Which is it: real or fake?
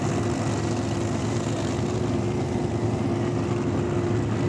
real